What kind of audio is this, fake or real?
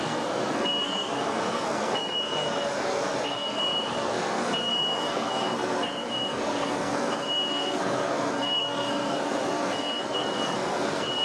fake